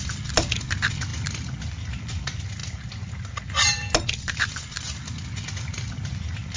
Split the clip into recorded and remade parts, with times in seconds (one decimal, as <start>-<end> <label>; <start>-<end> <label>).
0.0-6.6 recorded